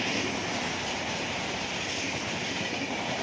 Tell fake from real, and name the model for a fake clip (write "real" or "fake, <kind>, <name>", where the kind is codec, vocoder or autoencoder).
real